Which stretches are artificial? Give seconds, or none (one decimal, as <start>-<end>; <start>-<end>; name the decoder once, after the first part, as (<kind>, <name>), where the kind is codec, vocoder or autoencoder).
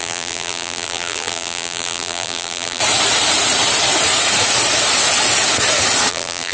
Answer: 0.0-2.8 (vocoder, BigVGAN v2); 6.1-6.5